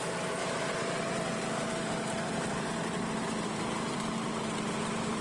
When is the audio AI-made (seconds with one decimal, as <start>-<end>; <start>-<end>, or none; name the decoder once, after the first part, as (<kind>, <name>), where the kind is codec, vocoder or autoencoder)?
0.0-5.2 (vocoder, BigVGAN v2)